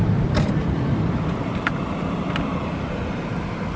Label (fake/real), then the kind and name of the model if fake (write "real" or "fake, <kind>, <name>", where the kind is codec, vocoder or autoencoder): fake, vocoder, BigVGAN v2